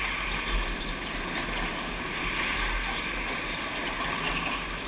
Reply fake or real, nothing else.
real